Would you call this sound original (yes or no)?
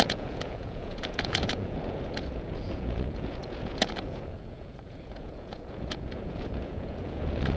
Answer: no